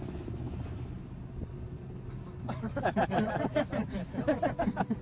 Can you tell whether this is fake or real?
real